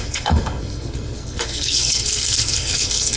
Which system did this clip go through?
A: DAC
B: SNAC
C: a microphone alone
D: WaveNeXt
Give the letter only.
B